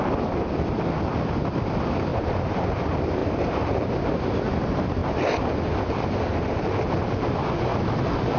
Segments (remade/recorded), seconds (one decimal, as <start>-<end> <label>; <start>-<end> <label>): 0.0-2.1 recorded; 2.1-2.8 remade; 2.8-3.2 recorded; 3.2-3.9 remade; 3.9-8.4 recorded